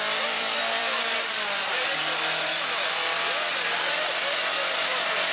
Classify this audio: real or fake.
fake